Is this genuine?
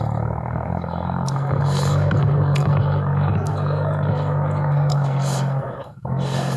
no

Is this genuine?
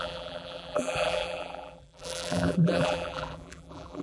no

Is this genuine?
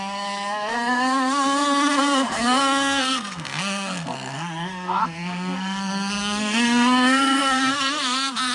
no